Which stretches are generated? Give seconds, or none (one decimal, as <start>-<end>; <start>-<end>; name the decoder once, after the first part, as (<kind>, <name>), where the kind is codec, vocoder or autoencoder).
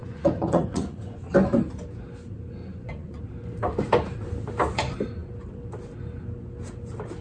0.0-1.3 (vocoder, Vocos); 2.6-3.2